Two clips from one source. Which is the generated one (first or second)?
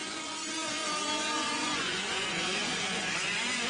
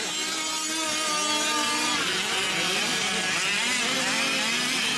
first